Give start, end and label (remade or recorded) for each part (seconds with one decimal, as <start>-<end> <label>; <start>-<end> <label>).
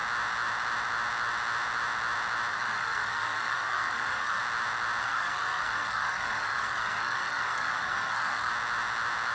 0.0-2.5 recorded; 2.5-4.4 remade; 4.4-5.0 recorded; 5.0-8.5 remade; 8.5-9.3 recorded